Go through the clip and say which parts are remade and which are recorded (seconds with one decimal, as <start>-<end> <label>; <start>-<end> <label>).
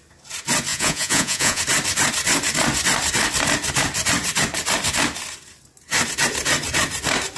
0.0-0.7 recorded; 0.7-1.6 remade; 1.6-7.4 recorded